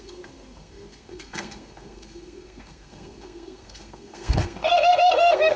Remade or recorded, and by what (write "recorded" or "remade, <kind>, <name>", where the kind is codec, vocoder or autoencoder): remade, codec, SNAC